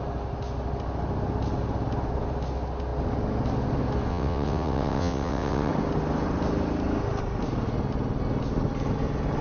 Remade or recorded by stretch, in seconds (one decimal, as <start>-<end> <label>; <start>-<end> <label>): 0.0-4.1 recorded; 4.1-5.7 remade; 5.7-9.4 recorded